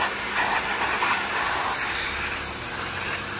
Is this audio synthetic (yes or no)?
no